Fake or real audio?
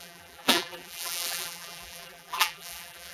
fake